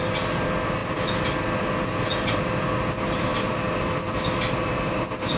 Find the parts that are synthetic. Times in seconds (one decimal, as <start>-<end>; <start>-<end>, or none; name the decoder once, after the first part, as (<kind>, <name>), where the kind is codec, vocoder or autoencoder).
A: none